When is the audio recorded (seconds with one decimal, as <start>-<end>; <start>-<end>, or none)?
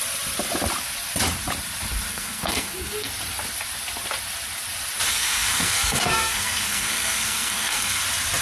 0.0-2.1; 3.1-5.1; 8.0-8.4